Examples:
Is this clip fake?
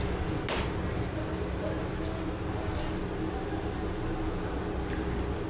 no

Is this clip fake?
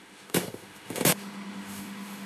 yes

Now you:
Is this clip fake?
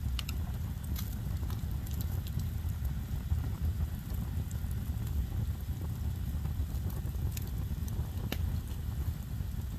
no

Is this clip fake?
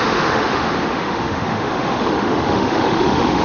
yes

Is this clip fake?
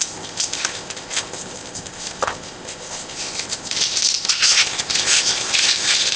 yes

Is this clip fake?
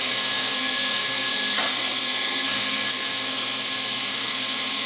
yes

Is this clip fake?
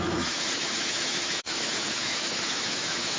yes